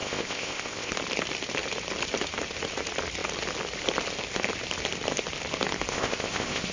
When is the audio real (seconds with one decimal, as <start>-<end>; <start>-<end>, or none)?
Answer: 0.9-5.9